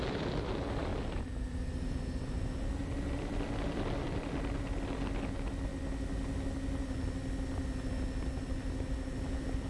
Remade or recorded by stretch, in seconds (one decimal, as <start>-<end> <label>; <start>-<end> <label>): 0.0-9.7 recorded